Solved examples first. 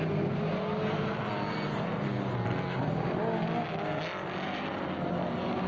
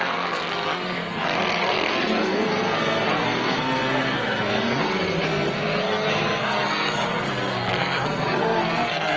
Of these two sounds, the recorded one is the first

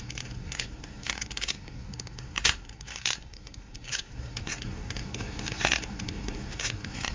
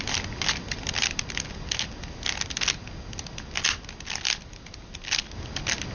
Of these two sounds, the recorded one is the second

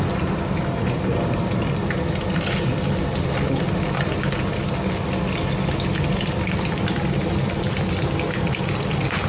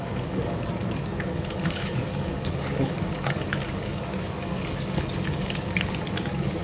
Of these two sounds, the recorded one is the first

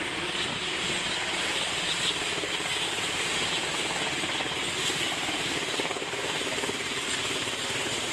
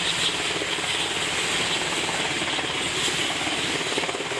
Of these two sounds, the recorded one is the second